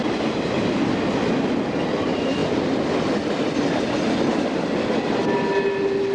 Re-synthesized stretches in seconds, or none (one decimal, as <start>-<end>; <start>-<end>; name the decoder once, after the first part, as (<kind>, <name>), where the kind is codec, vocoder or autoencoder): none